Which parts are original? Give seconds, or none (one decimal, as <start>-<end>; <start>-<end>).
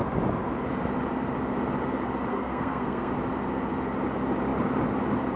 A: 0.0-2.3; 3.1-5.4